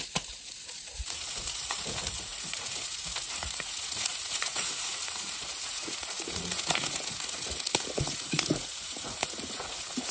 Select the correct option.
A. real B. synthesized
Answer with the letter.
B